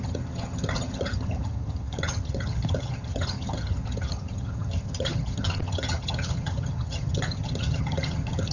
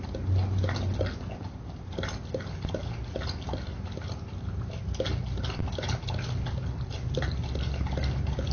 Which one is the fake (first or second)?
first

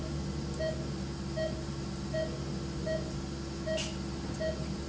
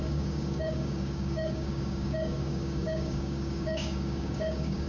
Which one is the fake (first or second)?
second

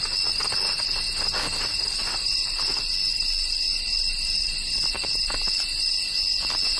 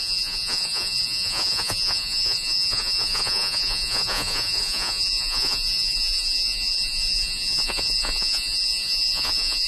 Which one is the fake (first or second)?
second